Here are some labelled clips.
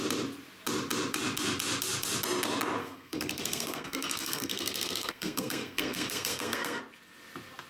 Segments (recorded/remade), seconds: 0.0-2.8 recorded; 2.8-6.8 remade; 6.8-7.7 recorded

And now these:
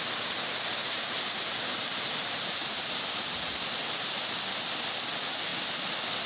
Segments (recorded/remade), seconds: 0.0-0.8 recorded; 0.8-3.0 remade; 3.0-6.3 recorded

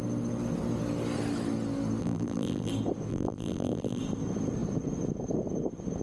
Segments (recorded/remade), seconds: 0.0-2.0 recorded; 2.0-2.7 remade; 2.7-3.1 recorded; 3.1-4.0 remade; 4.0-6.0 recorded

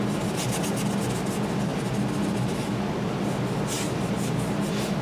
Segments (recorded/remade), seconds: 0.0-5.0 recorded

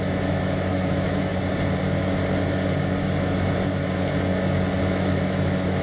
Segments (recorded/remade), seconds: 0.0-1.3 remade; 1.3-4.8 recorded; 4.8-5.8 remade

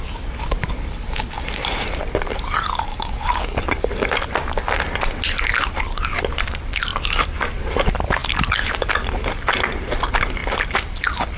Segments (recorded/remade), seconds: 0.0-2.9 recorded; 2.9-3.6 remade; 3.6-11.4 recorded